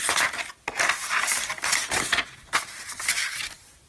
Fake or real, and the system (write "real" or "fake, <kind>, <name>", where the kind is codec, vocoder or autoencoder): real